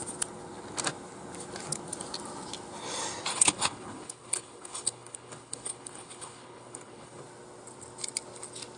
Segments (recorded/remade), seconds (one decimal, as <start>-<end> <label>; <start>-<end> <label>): 0.0-3.3 recorded; 3.3-7.2 remade; 7.2-8.8 recorded